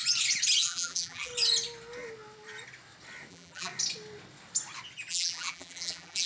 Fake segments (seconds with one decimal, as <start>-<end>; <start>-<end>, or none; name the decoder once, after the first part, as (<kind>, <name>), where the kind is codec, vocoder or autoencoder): 0.6-1.3 (vocoder, BigVGAN v2); 3.3-3.7; 5.1-6.3